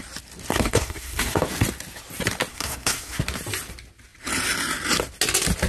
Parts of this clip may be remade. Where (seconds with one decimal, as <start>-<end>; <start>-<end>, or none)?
0.5-1.4; 2.5-3.2